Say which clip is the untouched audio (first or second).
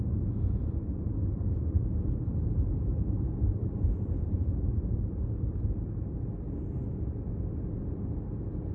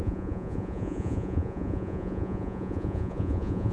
first